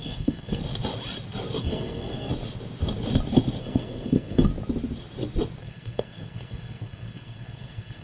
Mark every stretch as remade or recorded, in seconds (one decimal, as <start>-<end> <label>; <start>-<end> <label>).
0.0-0.6 remade; 0.6-1.6 recorded; 1.6-2.3 remade; 2.3-3.6 recorded; 3.6-4.5 remade; 4.5-5.6 recorded; 5.6-8.0 remade